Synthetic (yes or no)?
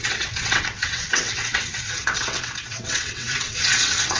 yes